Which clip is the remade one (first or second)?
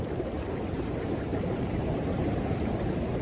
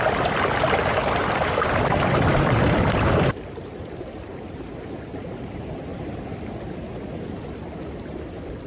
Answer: second